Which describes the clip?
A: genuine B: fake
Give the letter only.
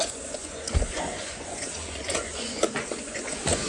B